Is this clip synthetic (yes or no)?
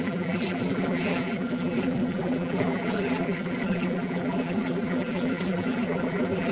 yes